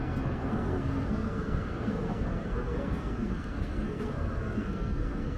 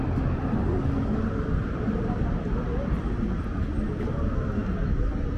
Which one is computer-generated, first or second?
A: first